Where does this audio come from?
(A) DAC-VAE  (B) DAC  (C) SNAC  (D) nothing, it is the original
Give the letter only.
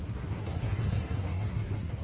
C